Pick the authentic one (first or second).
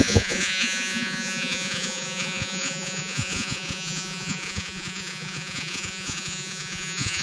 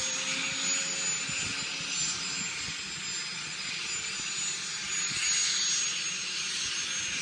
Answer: second